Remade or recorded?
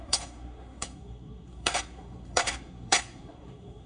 remade